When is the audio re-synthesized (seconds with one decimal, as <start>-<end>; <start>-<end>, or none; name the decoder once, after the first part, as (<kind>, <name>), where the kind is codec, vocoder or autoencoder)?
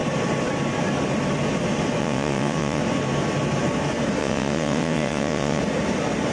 2.0-2.8 (vocoder, WaveNeXt); 4.2-5.6